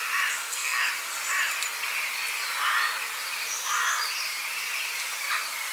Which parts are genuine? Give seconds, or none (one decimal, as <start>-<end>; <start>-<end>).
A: 0.0-0.4; 0.9-5.7